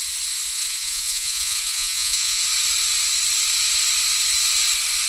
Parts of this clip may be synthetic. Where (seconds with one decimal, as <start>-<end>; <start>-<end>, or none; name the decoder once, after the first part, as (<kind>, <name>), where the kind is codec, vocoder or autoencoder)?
0.5-2.4 (vocoder, Vocos)